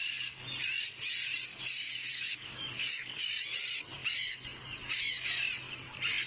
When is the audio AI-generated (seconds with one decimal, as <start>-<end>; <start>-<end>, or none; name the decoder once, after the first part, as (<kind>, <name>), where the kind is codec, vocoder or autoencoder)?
1.5-3.3 (codec, DAC)